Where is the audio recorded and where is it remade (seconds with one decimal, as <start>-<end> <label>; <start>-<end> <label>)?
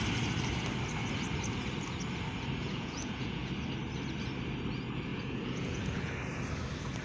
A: 0.0-2.6 recorded; 2.6-3.5 remade; 3.5-5.1 recorded; 5.1-6.1 remade; 6.1-7.0 recorded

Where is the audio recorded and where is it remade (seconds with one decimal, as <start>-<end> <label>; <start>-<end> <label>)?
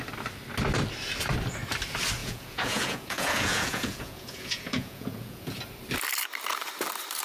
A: 0.0-2.2 recorded; 2.2-5.6 remade; 5.6-7.2 recorded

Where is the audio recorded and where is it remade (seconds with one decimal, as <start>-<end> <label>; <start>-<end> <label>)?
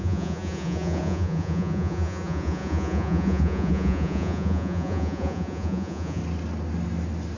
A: 0.0-6.2 remade; 6.2-7.4 recorded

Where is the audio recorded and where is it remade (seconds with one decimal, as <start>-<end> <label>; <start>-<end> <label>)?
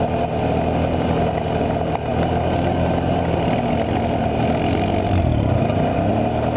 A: 0.0-6.6 recorded